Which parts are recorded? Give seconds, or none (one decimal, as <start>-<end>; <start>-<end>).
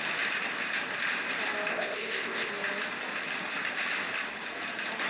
0.0-1.7; 2.5-5.1